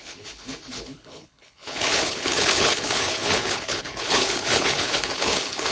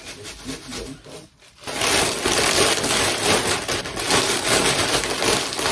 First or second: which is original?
second